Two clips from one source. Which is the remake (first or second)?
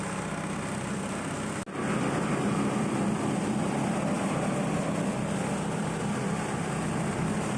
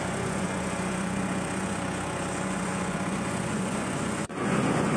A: second